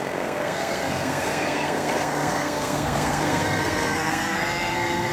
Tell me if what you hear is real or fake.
fake